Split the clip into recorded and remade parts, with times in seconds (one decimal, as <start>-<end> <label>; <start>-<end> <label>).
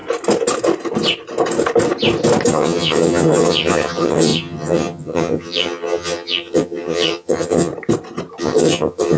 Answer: 0.0-2.5 recorded; 2.5-7.7 remade; 7.7-8.4 recorded; 8.4-9.2 remade